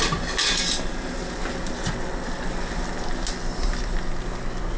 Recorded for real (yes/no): yes